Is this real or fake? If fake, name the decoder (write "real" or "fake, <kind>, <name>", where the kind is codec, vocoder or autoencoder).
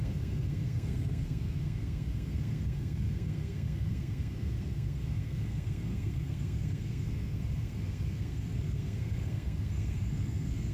fake, codec, SNAC